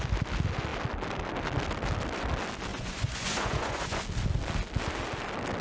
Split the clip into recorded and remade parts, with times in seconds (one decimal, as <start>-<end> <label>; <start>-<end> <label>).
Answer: 0.0-2.7 recorded; 2.7-4.0 remade; 4.0-5.6 recorded